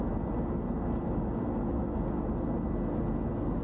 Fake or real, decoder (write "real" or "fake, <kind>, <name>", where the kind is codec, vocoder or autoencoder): real